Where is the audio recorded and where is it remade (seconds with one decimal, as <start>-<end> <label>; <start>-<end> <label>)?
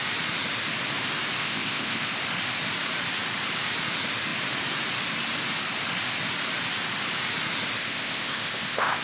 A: 0.0-1.4 recorded; 1.4-2.1 remade; 2.1-7.8 recorded; 7.8-9.0 remade